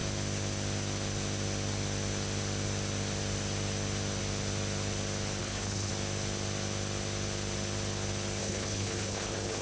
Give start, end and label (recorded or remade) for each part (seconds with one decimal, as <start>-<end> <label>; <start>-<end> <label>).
0.0-5.4 recorded; 5.4-5.9 remade; 5.9-8.4 recorded; 8.4-9.6 remade